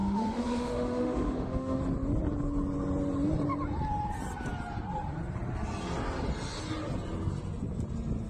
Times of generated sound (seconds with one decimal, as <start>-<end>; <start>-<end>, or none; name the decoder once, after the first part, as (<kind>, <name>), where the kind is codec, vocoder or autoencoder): 0.0-1.8 (autoencoder, DAC-VAE)